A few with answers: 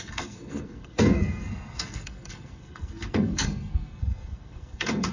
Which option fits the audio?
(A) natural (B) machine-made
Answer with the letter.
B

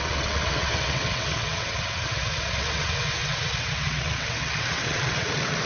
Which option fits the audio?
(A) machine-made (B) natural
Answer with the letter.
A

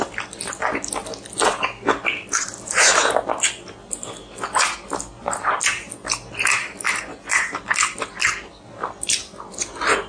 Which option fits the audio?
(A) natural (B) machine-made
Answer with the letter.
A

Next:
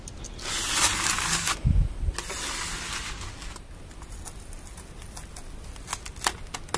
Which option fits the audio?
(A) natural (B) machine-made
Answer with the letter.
A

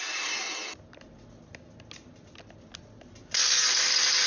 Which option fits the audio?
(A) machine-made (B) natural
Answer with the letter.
B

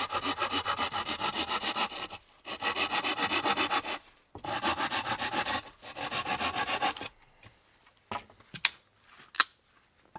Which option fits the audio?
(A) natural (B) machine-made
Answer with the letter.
A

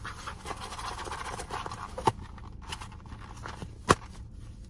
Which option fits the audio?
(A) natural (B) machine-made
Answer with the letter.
A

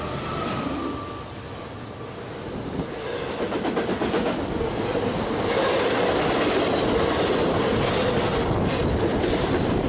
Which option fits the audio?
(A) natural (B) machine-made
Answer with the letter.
A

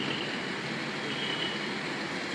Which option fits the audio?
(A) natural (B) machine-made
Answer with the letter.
A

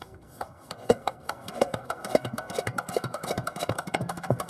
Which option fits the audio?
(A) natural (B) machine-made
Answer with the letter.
B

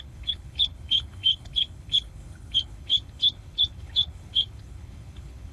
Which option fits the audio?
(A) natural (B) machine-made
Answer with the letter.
B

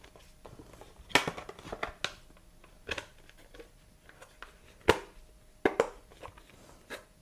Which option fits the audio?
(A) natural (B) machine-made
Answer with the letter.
A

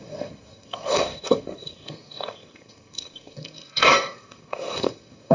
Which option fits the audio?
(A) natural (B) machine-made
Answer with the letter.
B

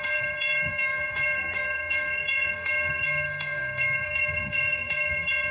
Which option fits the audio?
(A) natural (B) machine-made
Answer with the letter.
B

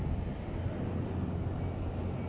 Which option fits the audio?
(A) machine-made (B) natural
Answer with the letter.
B